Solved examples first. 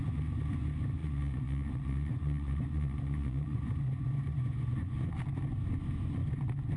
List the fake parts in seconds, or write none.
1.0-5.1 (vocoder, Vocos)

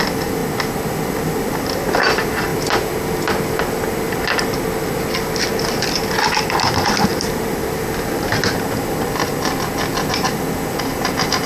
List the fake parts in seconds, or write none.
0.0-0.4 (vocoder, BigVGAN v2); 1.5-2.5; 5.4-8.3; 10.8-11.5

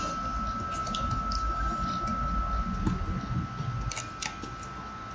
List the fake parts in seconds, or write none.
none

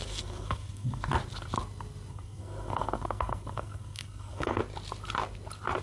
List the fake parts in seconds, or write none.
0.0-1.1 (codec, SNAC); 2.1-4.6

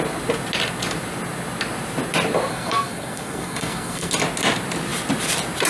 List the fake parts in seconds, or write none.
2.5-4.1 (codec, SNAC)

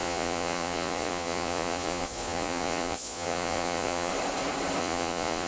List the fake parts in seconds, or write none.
0.0-4.1 (vocoder, Vocos); 4.8-5.5